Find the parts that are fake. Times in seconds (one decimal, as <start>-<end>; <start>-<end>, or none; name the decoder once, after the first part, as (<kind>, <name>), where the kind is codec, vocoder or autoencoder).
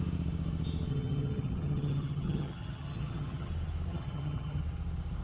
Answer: 0.9-3.5 (vocoder, HiFi-GAN); 3.9-4.6